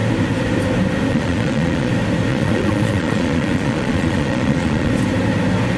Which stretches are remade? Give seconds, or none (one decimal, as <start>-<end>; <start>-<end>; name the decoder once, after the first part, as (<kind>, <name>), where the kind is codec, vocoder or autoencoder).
1.1-1.9 (vocoder, Vocos); 2.3-4.9